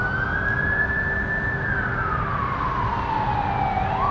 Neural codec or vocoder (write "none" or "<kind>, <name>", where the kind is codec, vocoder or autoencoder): none